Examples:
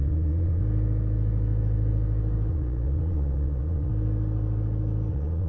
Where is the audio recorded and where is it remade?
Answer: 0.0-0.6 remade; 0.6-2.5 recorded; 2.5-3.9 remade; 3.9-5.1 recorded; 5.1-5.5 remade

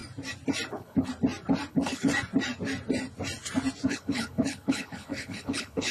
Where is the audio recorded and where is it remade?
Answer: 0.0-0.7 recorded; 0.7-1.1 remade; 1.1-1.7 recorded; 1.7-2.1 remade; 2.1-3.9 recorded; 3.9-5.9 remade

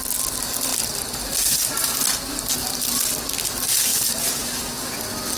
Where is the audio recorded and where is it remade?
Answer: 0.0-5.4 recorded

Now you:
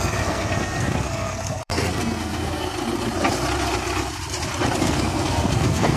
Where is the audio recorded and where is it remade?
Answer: 0.0-2.7 remade; 2.7-4.8 recorded; 4.8-6.0 remade

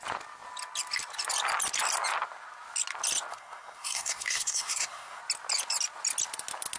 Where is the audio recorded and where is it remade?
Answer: 0.0-3.3 recorded; 3.3-5.2 remade; 5.2-6.8 recorded